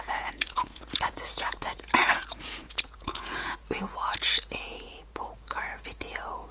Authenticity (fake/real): fake